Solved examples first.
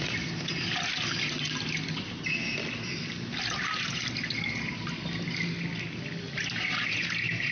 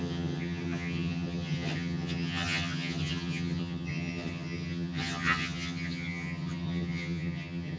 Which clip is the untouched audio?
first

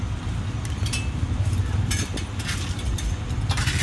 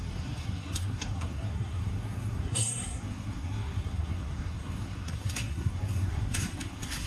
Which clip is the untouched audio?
first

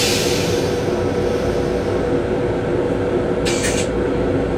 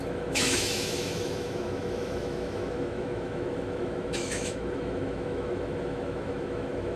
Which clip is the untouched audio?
first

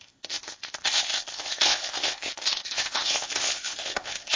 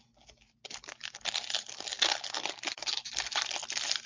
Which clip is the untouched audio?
second